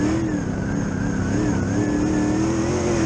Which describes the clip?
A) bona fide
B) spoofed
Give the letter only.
A